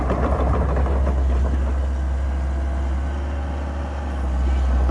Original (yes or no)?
yes